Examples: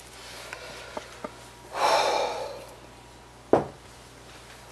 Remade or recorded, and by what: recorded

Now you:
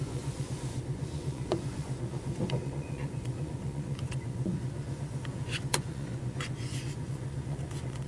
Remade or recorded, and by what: remade, vocoder, Vocos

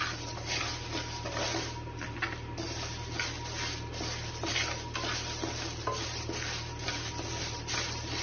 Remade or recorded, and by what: recorded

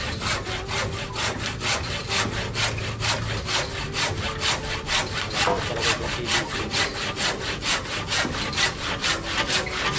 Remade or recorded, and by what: recorded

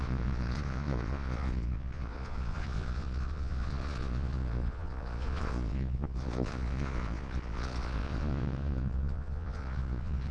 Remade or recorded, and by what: remade, vocoder, Vocos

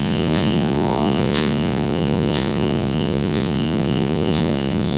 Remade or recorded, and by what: remade, vocoder, Vocos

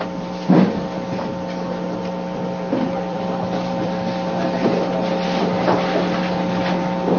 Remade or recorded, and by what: recorded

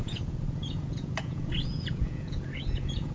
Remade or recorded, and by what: remade, vocoder, Vocos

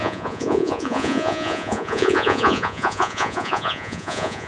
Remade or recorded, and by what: remade, vocoder, Vocos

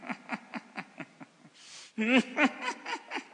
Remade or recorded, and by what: recorded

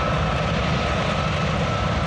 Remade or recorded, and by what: recorded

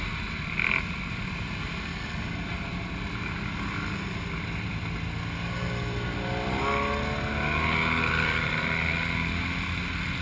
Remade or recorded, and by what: recorded